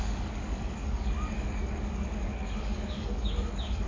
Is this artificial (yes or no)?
yes